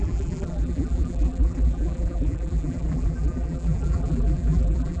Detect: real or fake fake